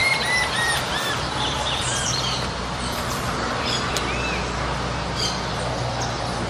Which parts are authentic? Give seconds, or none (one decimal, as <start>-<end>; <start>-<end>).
3.9-6.5